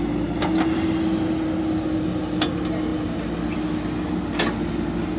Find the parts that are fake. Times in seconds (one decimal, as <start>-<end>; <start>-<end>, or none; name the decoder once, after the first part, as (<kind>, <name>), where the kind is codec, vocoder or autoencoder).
none